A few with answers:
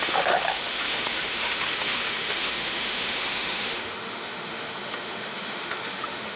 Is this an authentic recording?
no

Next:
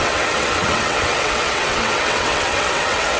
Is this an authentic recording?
no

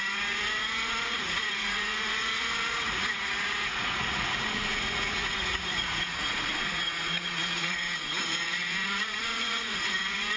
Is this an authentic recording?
no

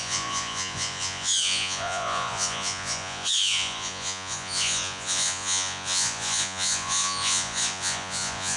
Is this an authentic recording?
no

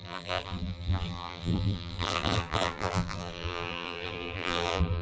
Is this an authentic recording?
no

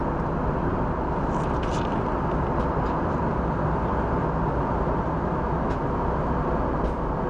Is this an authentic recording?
yes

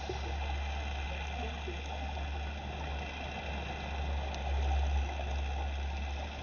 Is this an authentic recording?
yes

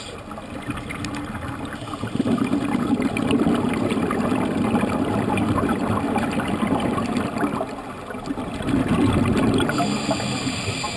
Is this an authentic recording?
yes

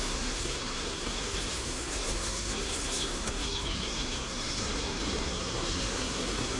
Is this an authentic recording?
no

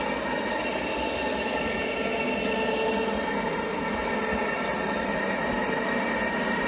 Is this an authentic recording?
yes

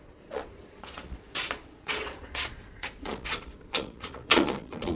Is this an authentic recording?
no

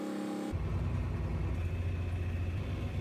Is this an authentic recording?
yes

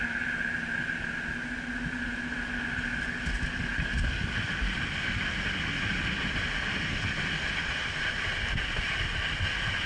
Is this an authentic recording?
yes